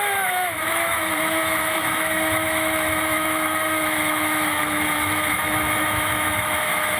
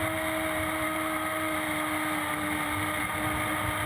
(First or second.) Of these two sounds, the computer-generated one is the first